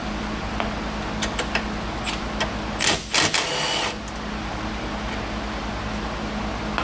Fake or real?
real